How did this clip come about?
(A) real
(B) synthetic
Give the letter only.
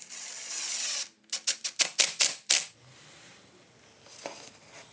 A